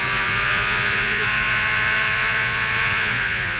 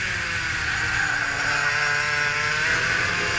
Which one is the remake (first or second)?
first